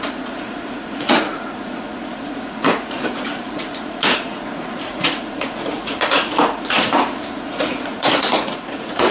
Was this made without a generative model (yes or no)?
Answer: no